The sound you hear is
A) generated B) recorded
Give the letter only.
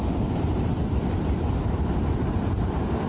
B